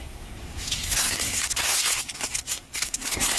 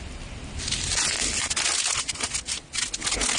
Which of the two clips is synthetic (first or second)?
first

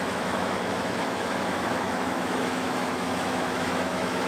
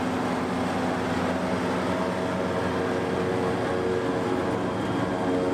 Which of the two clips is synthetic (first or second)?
first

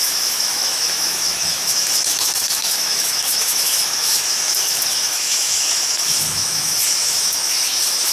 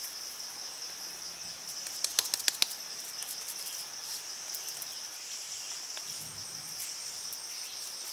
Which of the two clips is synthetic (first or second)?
first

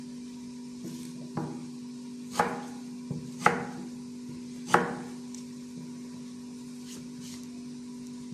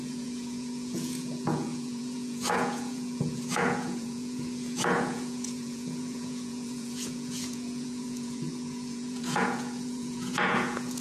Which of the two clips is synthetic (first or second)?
second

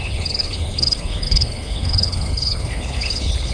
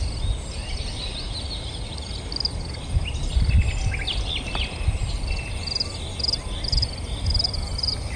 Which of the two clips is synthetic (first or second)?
first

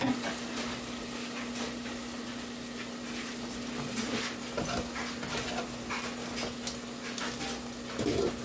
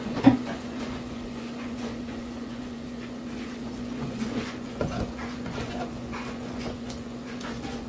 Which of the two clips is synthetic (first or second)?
second